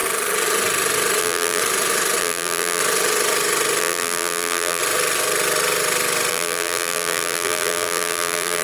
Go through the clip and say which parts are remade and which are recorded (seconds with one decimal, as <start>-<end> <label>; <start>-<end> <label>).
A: 0.0-1.2 recorded; 1.2-1.6 remade; 1.6-2.2 recorded; 2.2-2.8 remade; 2.8-3.8 recorded; 3.8-4.8 remade; 4.8-6.3 recorded; 6.3-8.6 remade